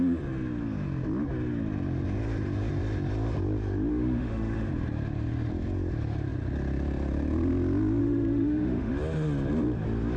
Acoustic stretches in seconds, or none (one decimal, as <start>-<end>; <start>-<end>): 0.0-3.9; 4.7-8.0; 8.9-10.2